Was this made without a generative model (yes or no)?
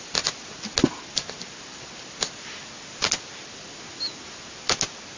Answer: yes